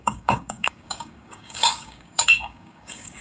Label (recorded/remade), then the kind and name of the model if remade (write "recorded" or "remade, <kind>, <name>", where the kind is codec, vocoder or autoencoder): remade, codec, DAC